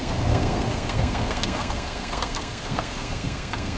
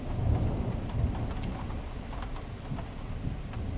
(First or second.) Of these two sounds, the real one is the second